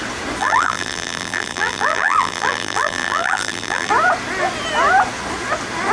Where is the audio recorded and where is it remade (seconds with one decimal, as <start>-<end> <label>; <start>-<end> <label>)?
0.0-0.4 recorded; 0.4-3.9 remade; 3.9-5.9 recorded